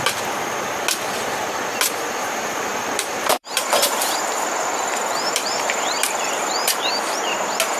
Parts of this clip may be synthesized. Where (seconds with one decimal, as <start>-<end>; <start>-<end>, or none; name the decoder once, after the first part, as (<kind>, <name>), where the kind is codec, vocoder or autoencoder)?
2.2-6.9 (vocoder, BigVGAN v2)